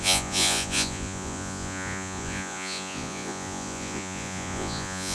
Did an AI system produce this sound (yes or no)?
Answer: yes